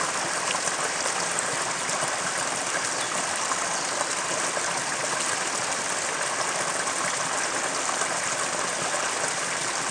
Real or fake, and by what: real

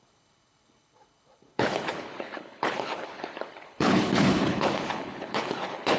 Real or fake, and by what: fake, codec, HILCodec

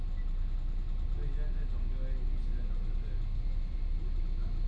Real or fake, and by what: real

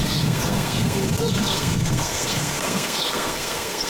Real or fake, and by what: fake, codec, SNAC